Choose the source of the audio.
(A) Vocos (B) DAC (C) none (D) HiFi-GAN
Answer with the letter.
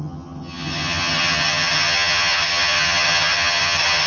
D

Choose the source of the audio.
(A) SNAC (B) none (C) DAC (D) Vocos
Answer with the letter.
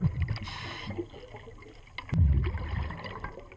B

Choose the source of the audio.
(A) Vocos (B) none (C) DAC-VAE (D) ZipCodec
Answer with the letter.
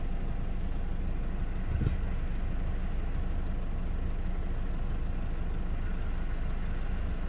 B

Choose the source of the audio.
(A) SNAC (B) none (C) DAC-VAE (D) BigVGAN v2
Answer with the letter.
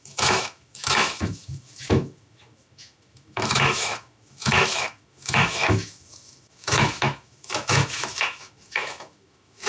C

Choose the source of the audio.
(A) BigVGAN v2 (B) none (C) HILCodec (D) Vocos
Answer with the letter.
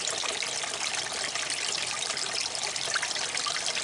B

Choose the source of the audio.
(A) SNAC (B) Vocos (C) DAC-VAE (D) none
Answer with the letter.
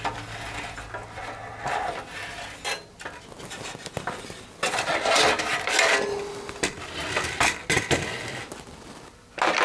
D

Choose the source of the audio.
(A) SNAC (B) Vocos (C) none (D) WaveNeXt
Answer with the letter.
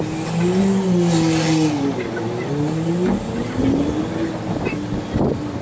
C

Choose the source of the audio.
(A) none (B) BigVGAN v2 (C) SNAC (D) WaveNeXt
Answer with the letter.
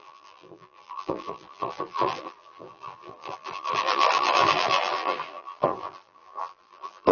B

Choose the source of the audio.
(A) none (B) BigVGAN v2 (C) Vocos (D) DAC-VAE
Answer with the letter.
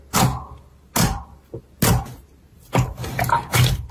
A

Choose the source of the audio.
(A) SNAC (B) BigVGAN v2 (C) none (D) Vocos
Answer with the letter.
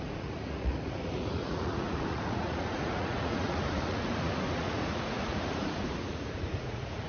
D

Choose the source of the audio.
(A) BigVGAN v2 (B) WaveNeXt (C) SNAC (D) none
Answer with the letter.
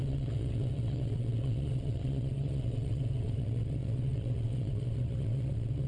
B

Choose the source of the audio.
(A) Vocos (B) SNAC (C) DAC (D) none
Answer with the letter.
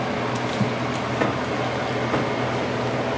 D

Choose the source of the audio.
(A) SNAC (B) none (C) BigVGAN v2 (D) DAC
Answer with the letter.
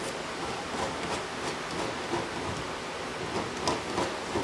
B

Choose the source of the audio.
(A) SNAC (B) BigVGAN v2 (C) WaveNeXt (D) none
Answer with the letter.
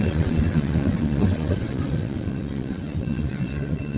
C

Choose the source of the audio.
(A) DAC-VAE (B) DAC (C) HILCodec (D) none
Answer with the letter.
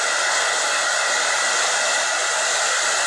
D